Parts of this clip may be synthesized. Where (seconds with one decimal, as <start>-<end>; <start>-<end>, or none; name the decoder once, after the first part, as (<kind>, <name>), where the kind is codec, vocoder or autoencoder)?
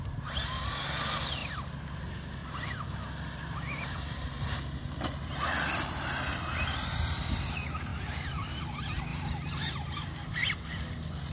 1.4-2.0 (vocoder, BigVGAN v2); 2.4-4.5; 7.9-8.6; 9.1-10.5